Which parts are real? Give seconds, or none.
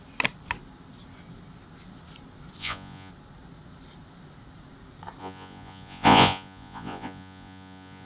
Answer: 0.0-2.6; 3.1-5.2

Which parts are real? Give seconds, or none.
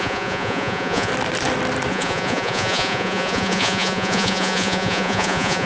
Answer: 1.1-1.9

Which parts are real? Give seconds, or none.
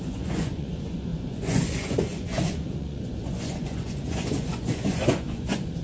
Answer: none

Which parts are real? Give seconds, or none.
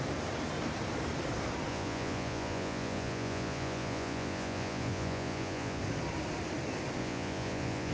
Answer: 0.0-1.7; 5.8-7.0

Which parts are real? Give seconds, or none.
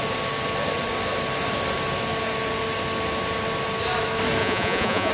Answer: 0.0-4.4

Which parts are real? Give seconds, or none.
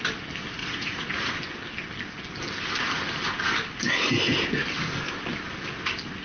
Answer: 0.0-0.6; 1.3-6.2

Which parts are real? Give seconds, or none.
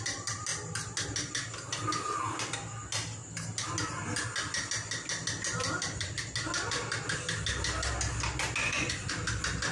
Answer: 0.0-8.6; 9.1-9.7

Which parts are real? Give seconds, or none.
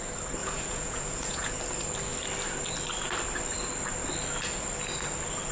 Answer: 0.0-0.4; 1.6-5.5